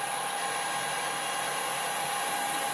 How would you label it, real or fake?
real